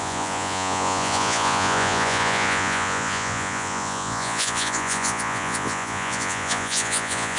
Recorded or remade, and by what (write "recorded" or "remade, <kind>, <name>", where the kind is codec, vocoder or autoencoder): remade, vocoder, Vocos